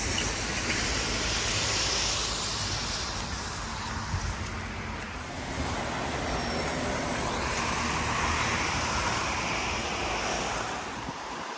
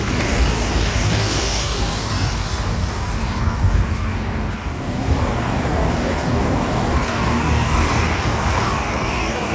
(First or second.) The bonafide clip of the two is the first